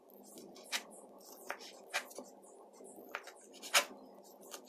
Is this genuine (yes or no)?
yes